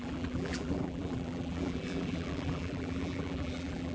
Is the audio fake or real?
fake